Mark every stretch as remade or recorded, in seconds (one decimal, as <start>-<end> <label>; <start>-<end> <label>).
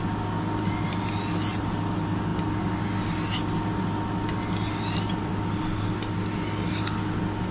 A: 0.0-7.5 recorded